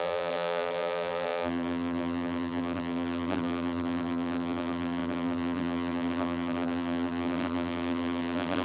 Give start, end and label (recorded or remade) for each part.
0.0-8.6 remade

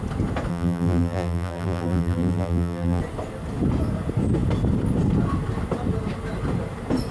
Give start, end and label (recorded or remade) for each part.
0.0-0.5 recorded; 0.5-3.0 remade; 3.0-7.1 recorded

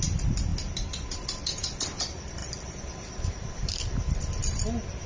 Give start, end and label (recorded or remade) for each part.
0.0-0.5 recorded; 0.5-1.8 remade; 1.8-2.4 recorded; 2.4-3.8 remade; 3.8-5.1 recorded

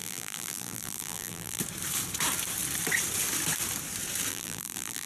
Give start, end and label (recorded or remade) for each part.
0.0-1.6 remade; 1.6-4.3 recorded; 4.3-5.1 remade

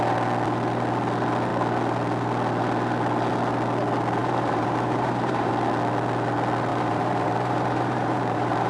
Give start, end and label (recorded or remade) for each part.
0.0-4.2 recorded; 4.2-5.5 remade; 5.5-6.7 recorded; 6.7-8.7 remade

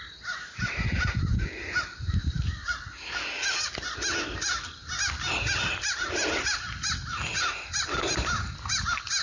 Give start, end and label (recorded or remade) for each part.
0.0-1.3 recorded; 1.3-4.0 remade; 4.0-9.2 recorded

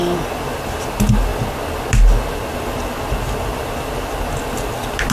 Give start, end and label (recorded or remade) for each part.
0.0-5.1 recorded